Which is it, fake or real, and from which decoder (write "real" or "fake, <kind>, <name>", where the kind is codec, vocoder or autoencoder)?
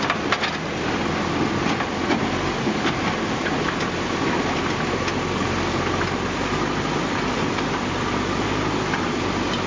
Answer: real